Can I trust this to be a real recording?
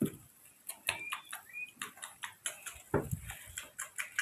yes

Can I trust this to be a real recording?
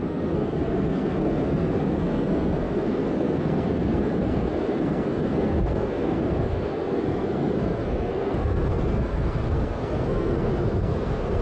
no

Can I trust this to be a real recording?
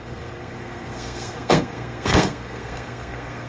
no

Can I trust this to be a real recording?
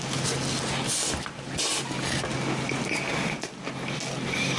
yes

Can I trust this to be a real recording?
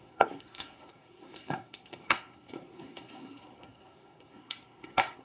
no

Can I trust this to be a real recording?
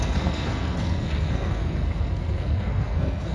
no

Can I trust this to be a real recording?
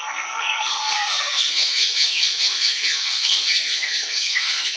no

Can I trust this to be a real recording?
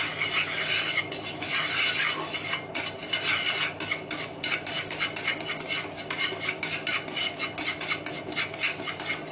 yes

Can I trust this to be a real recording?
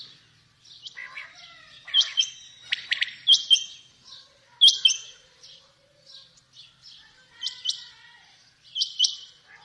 yes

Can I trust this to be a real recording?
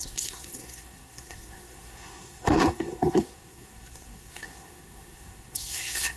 no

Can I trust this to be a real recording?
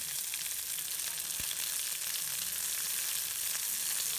yes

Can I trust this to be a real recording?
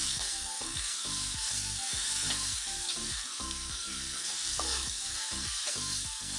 no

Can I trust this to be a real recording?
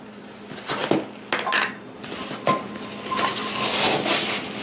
yes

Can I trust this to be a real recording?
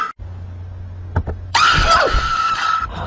yes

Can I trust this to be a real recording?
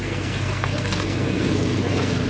no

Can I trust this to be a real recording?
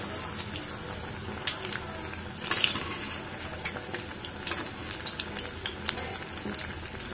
yes